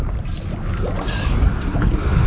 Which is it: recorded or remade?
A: recorded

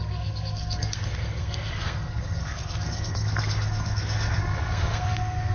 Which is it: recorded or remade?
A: remade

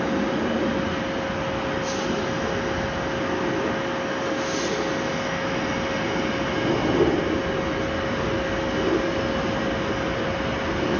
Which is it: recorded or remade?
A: recorded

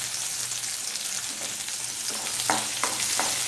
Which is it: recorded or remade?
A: recorded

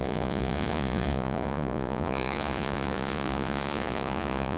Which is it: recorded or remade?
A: remade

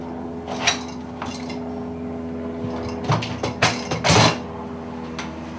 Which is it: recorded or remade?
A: recorded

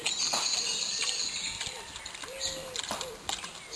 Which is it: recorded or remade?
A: recorded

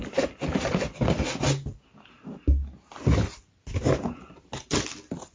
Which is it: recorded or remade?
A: recorded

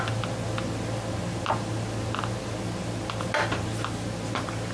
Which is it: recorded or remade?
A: recorded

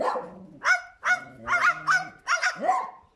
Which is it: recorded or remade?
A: recorded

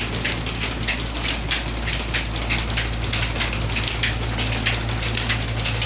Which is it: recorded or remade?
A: recorded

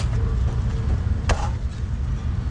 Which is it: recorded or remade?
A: recorded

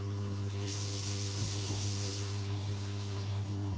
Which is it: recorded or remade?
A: remade